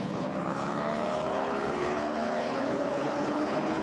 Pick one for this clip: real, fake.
fake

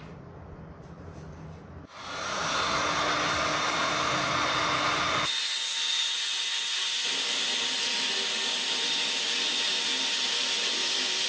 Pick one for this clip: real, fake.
real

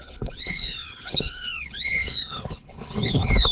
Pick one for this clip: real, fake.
fake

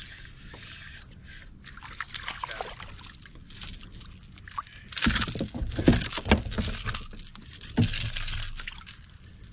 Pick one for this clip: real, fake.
real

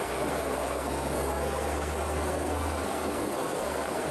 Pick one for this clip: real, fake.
fake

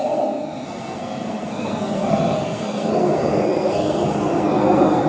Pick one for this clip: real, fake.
fake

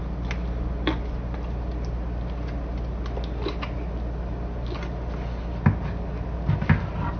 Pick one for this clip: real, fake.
real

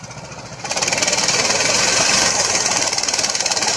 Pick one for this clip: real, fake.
real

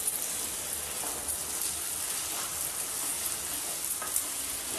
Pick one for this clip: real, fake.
real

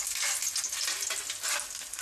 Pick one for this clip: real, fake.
real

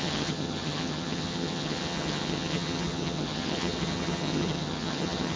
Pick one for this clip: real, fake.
fake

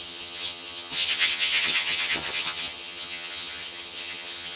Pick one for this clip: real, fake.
fake